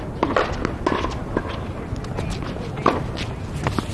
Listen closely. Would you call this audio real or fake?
real